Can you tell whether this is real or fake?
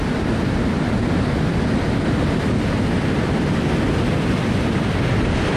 real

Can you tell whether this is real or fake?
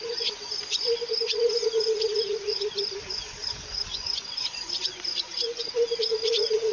fake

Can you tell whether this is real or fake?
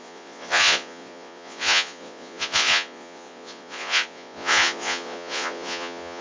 fake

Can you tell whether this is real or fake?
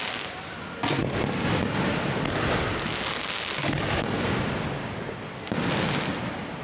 real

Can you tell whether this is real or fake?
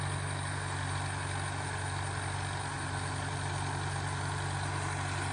real